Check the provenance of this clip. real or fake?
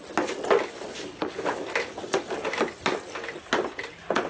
real